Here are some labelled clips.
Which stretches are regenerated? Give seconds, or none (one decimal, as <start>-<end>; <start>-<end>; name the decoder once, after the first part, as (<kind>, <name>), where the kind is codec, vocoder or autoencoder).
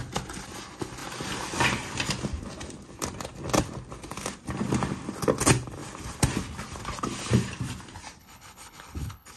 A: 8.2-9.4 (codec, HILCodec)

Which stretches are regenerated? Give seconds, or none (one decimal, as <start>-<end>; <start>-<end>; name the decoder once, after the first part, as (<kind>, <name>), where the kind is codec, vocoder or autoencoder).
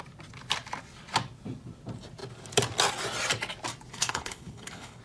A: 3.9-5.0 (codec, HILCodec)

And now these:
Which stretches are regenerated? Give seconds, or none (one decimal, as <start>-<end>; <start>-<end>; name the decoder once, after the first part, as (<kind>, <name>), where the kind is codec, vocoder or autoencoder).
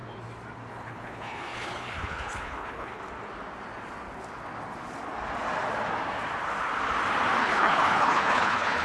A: 0.7-3.0 (codec, HILCodec); 7.4-8.8